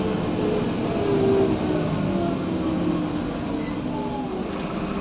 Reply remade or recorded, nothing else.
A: recorded